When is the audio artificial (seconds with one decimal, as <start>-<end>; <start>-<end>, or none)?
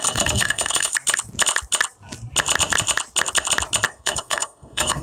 0.0-0.9; 3.9-5.0